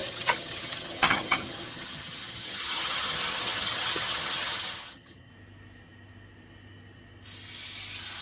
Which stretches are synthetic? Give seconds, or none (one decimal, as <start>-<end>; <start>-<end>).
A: 0.0-5.3